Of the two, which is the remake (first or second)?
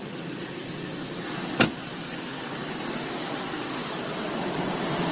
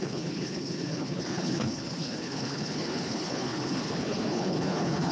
second